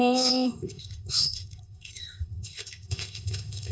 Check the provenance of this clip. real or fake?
fake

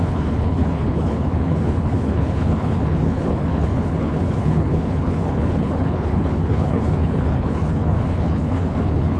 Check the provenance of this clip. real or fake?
fake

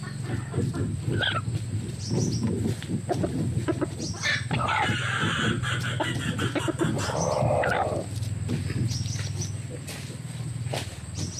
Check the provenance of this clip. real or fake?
real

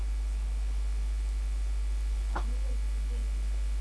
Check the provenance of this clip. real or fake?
real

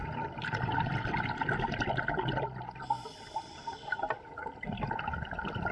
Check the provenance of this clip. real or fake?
real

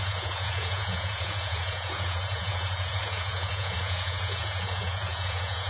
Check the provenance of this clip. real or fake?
fake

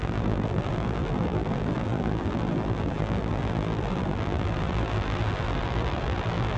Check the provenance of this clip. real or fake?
fake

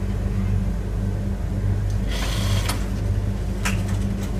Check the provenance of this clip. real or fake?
real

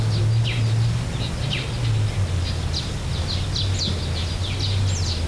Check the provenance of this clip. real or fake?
real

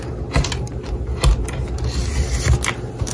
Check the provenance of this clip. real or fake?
real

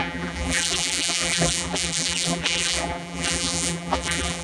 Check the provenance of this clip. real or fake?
fake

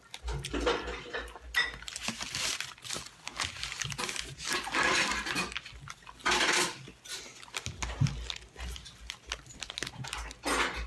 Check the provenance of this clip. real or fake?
real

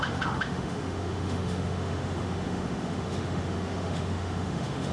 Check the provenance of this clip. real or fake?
fake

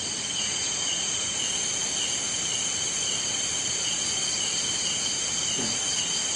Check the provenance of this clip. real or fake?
real